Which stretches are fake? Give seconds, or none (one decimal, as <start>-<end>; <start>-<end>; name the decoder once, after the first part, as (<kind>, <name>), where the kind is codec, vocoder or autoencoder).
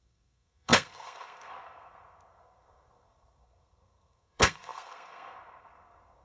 0.0-6.2 (codec, SNAC)